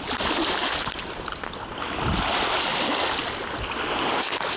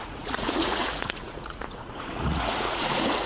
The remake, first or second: second